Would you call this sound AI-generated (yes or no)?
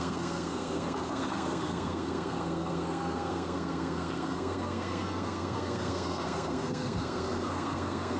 yes